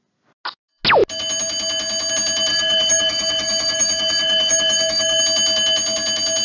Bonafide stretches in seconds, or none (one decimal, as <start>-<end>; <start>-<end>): 0.0-2.5; 5.2-6.4